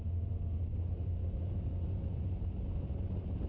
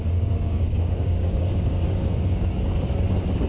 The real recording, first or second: first